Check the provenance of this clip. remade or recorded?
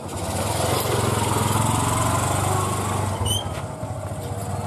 recorded